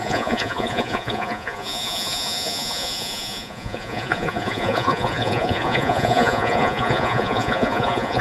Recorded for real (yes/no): no